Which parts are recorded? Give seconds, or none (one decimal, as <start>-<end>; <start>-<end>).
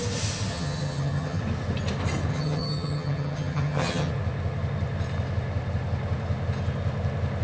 0.0-0.5; 1.4-2.3; 4.1-7.4